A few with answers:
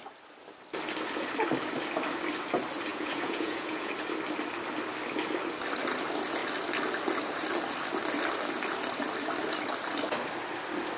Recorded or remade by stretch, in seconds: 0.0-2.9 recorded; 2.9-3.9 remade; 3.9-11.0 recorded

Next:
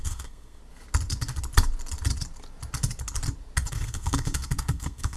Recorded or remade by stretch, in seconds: 0.0-0.6 remade; 0.6-3.7 recorded; 3.7-5.2 remade